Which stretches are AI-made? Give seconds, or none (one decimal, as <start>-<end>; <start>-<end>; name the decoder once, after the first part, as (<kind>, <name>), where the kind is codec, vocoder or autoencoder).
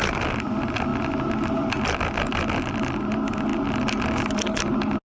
none